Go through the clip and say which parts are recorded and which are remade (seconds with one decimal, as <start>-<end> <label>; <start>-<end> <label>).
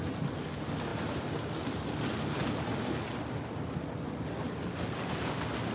0.0-5.7 recorded